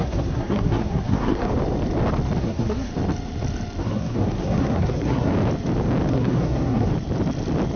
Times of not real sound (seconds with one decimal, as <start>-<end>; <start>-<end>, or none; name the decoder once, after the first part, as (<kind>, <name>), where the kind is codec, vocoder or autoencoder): 0.0-1.5 (codec, SNAC); 2.4-2.9; 3.8-5.3; 6.1-6.9